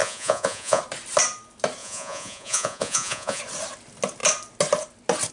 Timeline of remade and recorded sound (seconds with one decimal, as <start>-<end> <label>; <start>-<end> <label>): 0.0-0.8 remade; 0.8-1.8 recorded; 1.8-3.4 remade; 3.4-5.3 recorded